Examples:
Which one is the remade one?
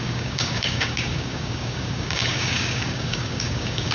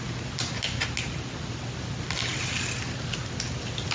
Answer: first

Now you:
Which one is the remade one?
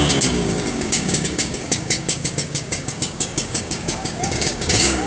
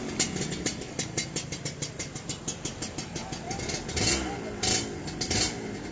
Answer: first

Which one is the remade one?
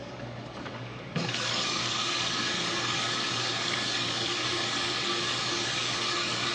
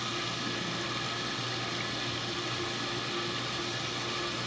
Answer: first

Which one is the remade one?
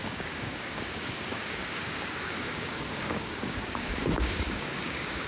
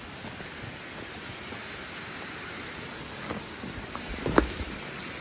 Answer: first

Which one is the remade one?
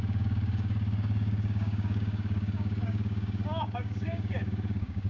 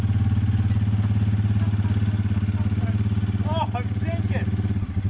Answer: first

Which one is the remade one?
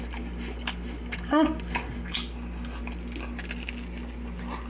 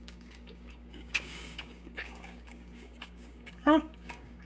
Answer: second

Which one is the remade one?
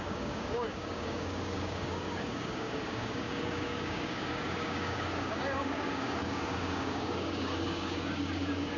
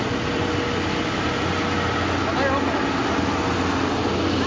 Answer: first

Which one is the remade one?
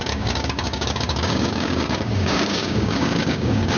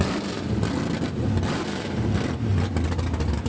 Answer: first